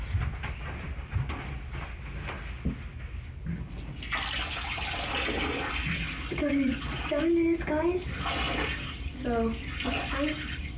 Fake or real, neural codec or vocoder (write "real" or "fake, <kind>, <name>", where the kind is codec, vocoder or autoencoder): real